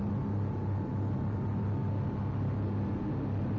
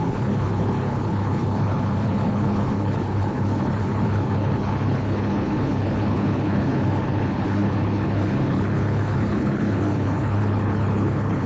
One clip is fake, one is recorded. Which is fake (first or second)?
second